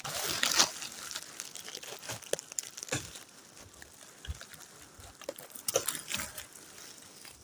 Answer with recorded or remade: recorded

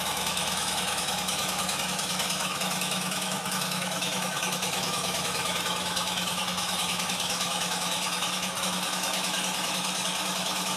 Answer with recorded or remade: remade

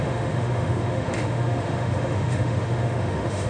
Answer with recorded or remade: remade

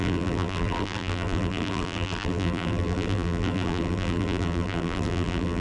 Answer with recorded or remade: remade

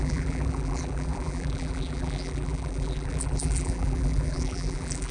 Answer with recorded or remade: remade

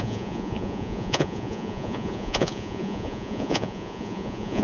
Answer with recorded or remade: remade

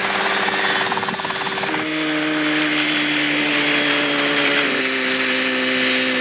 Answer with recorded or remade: recorded